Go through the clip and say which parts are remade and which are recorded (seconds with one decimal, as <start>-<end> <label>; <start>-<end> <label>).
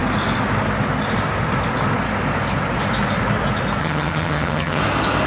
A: 0.0-3.8 recorded; 3.8-4.8 remade; 4.8-5.3 recorded